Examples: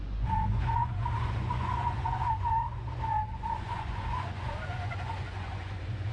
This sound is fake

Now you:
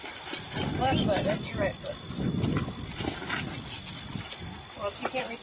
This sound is fake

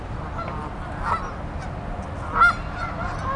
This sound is real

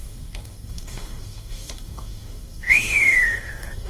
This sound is fake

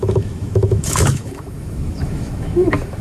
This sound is fake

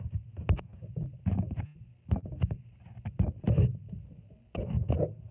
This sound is real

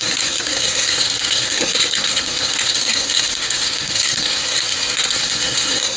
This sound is fake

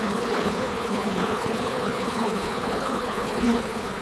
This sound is fake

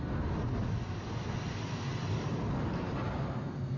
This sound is real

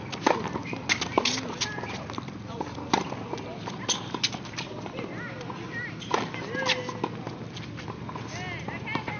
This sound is real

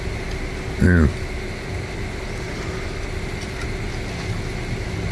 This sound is real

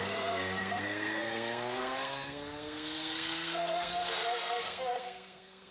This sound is fake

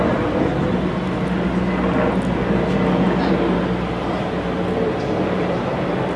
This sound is real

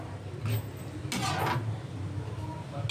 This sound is real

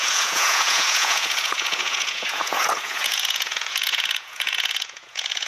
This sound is fake